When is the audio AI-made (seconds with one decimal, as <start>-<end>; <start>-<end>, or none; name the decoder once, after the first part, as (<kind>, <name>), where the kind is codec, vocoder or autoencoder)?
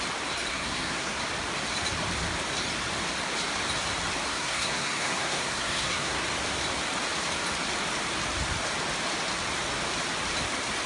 0.5-1.2 (codec, SNAC); 4.3-6.2